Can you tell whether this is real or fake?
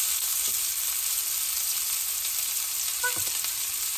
real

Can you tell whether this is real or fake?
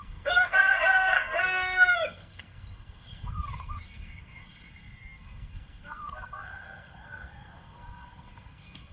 fake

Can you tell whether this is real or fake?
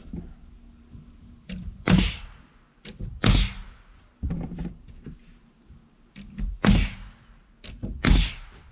real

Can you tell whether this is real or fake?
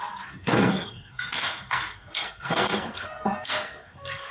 fake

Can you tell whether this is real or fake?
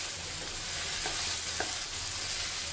real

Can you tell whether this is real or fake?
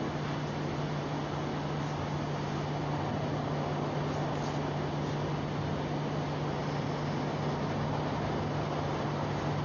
real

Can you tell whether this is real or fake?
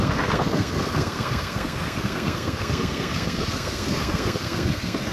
fake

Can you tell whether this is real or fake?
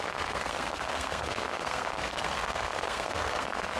fake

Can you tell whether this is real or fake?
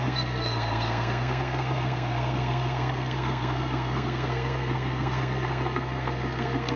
fake